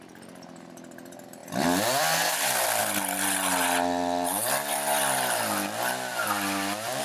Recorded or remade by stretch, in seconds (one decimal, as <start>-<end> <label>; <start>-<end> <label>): 0.0-6.1 recorded; 6.1-7.0 remade